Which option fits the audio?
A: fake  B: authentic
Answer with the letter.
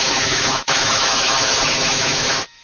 A